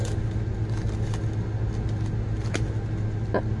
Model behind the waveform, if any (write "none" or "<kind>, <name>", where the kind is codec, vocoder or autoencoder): none